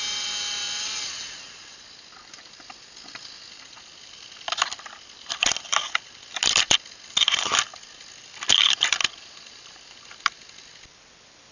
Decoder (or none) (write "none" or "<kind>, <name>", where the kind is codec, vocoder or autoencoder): none